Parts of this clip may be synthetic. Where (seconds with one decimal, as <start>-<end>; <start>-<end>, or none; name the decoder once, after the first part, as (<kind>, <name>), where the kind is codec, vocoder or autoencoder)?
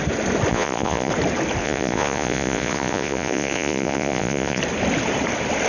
0.5-1.1 (vocoder, Vocos); 1.6-4.6